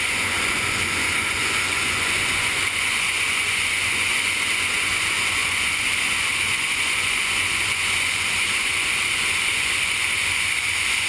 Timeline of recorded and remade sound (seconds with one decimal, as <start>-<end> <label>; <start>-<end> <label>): 0.0-11.1 remade